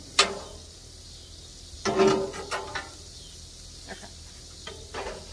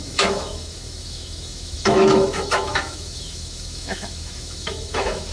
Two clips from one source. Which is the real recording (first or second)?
first